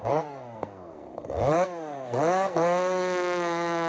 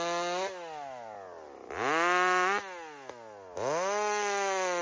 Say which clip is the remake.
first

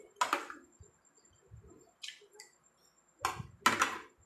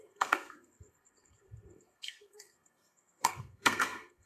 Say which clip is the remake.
second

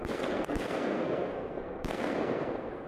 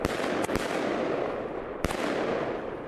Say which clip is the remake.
first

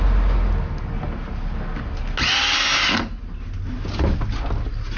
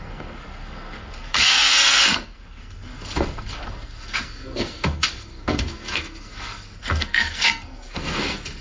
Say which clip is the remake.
second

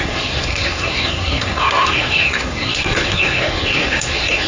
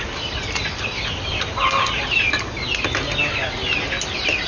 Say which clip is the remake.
first